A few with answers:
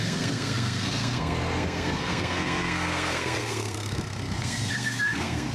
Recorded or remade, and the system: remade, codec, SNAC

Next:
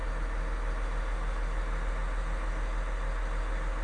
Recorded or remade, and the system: recorded